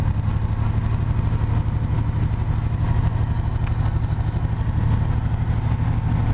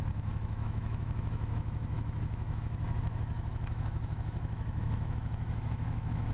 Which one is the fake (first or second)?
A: second